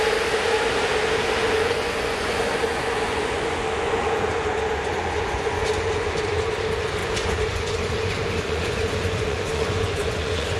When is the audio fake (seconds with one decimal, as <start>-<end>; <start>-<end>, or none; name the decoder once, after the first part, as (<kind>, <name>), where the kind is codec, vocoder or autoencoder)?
1.4-6.3 (vocoder, Vocos); 7.0-10.6